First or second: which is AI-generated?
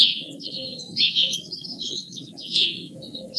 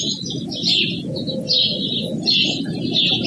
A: first